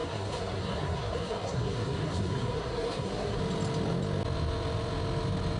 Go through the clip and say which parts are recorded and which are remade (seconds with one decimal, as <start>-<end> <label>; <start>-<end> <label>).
0.0-3.4 remade; 3.4-5.6 recorded